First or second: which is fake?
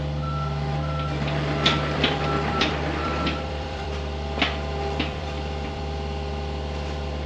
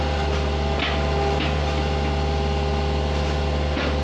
first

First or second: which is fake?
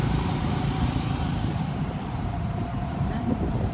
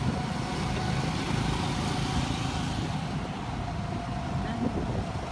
first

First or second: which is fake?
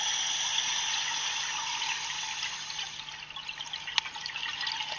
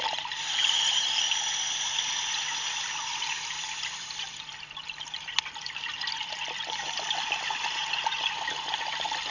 second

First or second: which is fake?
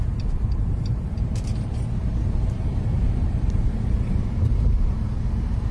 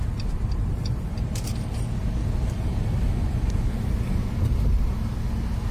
first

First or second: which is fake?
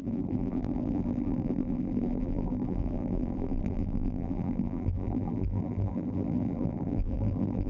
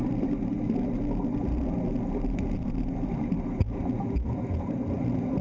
first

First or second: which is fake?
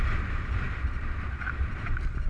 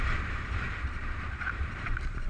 second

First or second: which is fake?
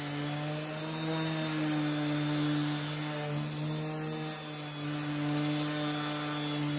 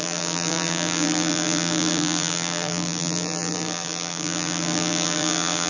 second